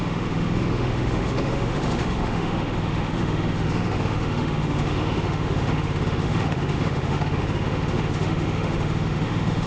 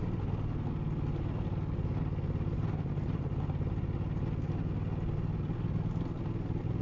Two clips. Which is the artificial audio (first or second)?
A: first